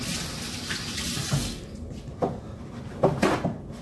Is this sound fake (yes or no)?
no